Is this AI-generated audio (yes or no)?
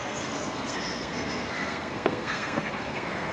yes